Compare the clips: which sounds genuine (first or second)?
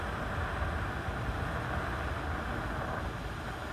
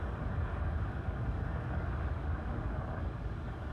first